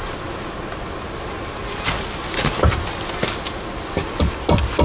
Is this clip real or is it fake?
real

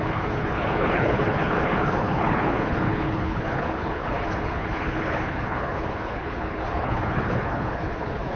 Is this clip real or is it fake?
fake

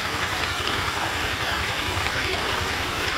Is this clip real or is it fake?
fake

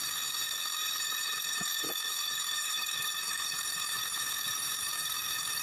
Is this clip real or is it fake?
fake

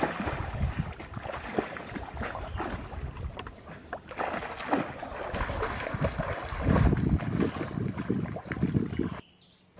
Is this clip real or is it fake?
real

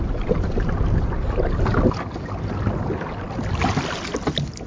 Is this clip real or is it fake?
real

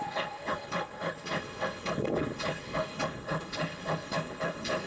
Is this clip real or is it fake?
fake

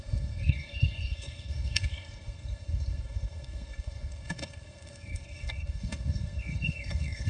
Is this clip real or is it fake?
fake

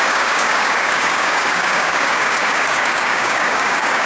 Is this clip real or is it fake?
fake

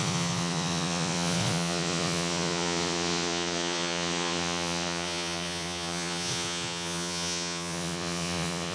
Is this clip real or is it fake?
fake